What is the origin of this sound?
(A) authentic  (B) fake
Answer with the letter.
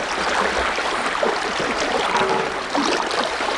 A